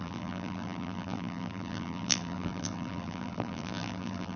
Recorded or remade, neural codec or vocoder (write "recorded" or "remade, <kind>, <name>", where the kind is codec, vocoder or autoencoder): remade, vocoder, BigVGAN v2